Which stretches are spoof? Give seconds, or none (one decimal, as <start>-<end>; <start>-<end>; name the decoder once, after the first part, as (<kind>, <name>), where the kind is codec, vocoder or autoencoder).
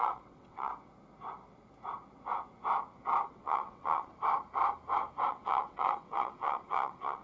0.0-0.7 (vocoder, WaveNeXt); 3.3-4.1; 5.3-7.2